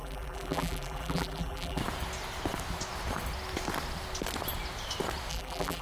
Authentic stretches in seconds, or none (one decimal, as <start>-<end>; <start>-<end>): 1.8-5.3